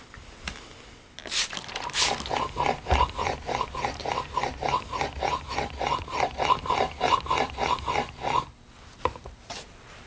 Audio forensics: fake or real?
real